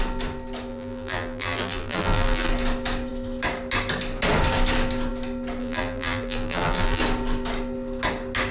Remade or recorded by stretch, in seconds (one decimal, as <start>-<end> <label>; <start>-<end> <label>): 0.0-0.7 recorded; 0.7-2.5 remade; 2.5-5.6 recorded; 5.6-7.0 remade; 7.0-8.5 recorded